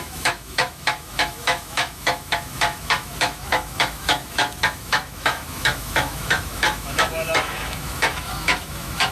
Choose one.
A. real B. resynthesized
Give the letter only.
B